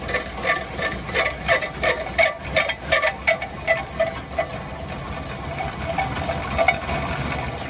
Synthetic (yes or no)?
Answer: no